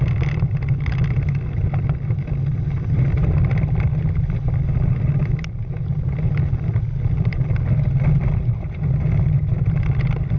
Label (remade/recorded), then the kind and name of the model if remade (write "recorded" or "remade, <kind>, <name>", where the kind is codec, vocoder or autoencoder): recorded